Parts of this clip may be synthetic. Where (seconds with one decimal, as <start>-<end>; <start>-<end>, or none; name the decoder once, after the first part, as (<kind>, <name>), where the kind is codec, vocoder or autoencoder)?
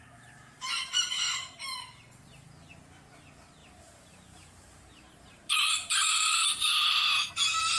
3.6-7.3 (vocoder, BigVGAN v2)